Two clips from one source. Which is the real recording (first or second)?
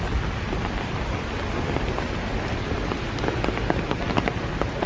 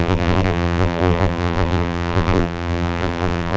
first